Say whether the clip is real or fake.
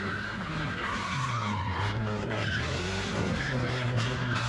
fake